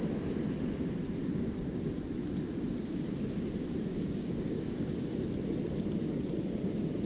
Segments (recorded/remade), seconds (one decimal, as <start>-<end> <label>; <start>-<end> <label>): 0.0-1.2 recorded; 1.2-1.9 remade; 1.9-3.9 recorded; 3.9-4.8 remade; 4.8-7.1 recorded

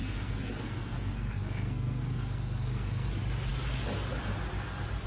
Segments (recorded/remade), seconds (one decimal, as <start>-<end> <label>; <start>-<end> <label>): 0.0-3.1 remade; 3.1-5.1 recorded

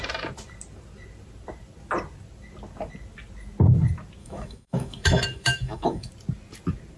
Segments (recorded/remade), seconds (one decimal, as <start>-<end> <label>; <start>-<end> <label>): 0.0-4.2 recorded; 4.2-6.1 remade; 6.1-7.0 recorded

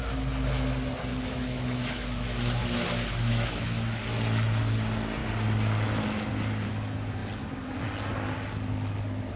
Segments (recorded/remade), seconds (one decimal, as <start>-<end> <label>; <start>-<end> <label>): 0.0-1.1 recorded; 1.1-4.0 remade; 4.0-9.4 recorded

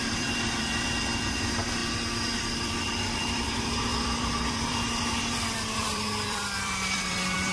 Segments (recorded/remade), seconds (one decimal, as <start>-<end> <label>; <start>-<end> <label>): 0.0-1.8 remade; 1.8-2.4 recorded; 2.4-7.5 remade